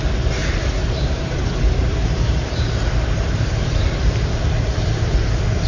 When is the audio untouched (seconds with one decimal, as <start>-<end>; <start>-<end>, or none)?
0.0-0.4; 3.8-5.7